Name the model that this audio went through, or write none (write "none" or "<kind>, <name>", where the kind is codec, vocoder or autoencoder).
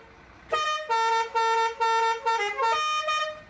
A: none